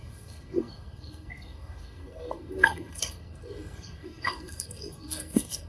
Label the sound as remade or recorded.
remade